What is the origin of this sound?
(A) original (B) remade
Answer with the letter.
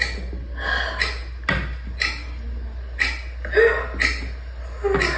A